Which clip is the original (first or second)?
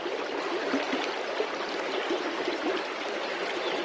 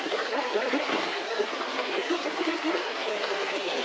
first